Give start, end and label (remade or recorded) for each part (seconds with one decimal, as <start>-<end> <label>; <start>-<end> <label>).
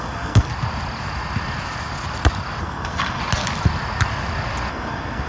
0.0-0.5 remade; 0.5-2.6 recorded; 2.6-3.2 remade; 3.2-4.7 recorded; 4.7-5.3 remade